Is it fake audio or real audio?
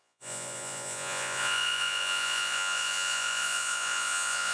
fake